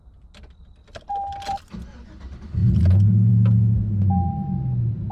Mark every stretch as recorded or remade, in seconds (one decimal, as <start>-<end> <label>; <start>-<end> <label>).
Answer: 0.0-0.8 recorded; 0.8-1.6 remade; 1.6-5.1 recorded